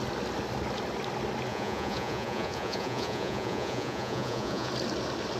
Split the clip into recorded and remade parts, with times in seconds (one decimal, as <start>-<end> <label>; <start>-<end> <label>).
0.0-1.5 recorded; 1.5-4.7 remade; 4.7-5.4 recorded